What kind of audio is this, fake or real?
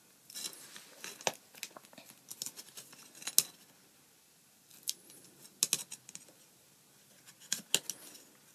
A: real